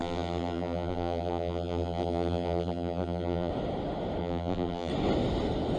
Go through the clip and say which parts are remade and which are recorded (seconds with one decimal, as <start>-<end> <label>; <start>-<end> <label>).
0.0-3.5 remade; 3.5-4.2 recorded; 4.2-4.9 remade; 4.9-5.8 recorded